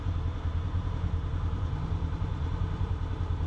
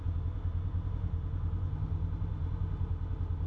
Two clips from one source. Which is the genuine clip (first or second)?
second